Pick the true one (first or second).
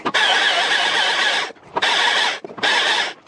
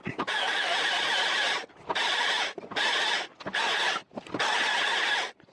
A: first